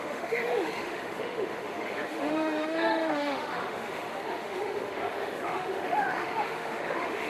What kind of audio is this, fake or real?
fake